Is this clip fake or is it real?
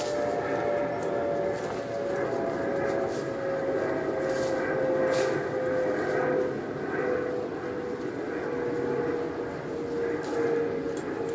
real